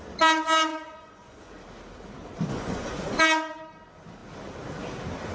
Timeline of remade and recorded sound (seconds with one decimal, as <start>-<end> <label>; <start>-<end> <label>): 0.0-0.7 recorded; 0.7-1.5 remade; 1.5-2.5 recorded; 2.5-3.2 remade; 3.2-5.3 recorded